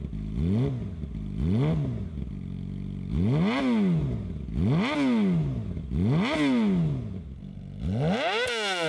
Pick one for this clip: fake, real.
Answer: real